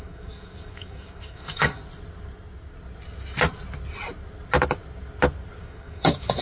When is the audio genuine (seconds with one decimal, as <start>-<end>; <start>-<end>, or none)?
1.8-5.6